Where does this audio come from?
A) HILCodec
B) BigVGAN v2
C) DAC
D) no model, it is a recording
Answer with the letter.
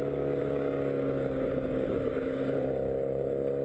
C